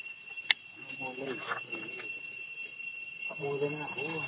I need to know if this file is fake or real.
real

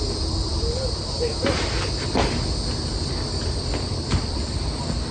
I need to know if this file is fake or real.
real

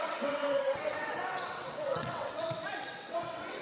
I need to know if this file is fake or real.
fake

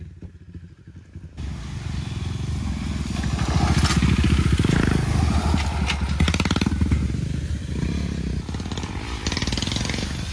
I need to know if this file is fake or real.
real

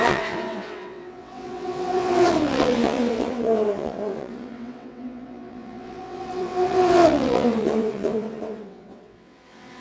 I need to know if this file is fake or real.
fake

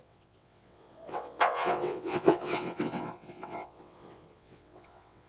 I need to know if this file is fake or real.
fake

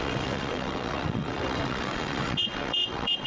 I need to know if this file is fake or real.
fake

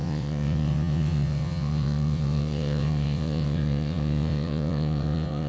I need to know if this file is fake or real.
fake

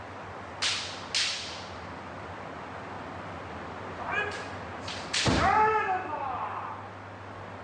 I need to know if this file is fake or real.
real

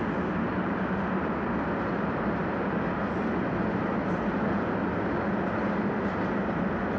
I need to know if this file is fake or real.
real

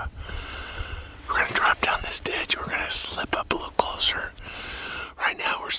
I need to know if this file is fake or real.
fake